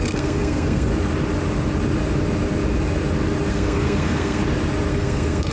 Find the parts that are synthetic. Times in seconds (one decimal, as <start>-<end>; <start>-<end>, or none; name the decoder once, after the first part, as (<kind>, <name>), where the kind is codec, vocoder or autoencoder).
0.0-0.9 (codec, SNAC); 3.5-4.4; 4.9-5.5